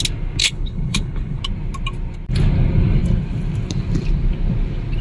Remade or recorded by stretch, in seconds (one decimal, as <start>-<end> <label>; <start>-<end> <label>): 0.0-0.4 recorded; 0.4-1.4 remade; 1.4-5.0 recorded